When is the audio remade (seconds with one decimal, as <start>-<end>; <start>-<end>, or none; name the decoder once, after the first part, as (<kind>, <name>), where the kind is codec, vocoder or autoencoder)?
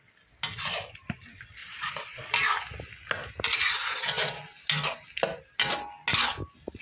1.6-2.2 (vocoder, Vocos); 3.8-4.4